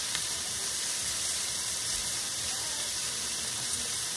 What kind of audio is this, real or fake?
fake